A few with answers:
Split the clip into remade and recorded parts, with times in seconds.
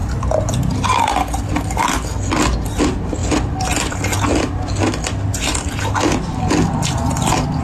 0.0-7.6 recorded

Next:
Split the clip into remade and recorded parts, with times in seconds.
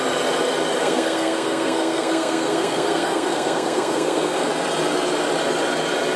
0.0-0.8 recorded; 0.8-4.5 remade; 4.5-6.2 recorded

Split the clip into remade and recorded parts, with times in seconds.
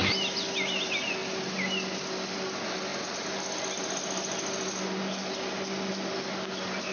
0.0-6.9 recorded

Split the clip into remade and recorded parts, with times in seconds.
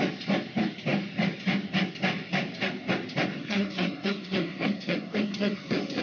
0.0-3.4 recorded; 3.4-6.0 remade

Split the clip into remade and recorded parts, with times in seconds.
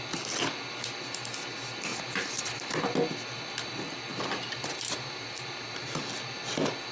0.0-1.9 recorded; 1.9-2.8 remade; 2.8-4.1 recorded; 4.1-6.1 remade; 6.1-6.9 recorded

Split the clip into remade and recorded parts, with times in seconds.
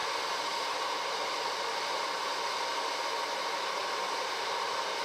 0.0-3.8 recorded; 3.8-5.0 remade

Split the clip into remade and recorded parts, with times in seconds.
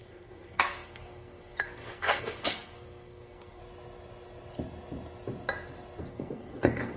0.0-3.6 remade; 3.6-6.0 recorded; 6.0-7.0 remade